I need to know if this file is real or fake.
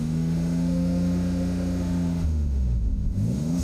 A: fake